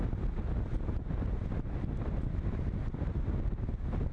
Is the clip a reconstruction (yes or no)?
no